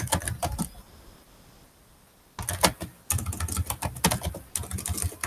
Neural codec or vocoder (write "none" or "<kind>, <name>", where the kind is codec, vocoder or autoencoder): none